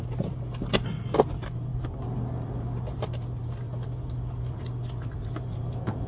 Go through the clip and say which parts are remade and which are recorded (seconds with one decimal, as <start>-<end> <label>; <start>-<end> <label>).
0.0-6.1 recorded